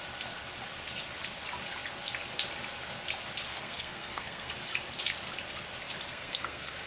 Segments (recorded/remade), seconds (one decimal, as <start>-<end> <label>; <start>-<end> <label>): 0.0-3.5 recorded; 3.5-4.5 remade; 4.5-6.1 recorded; 6.1-6.9 remade